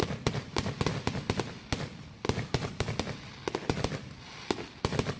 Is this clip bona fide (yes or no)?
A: yes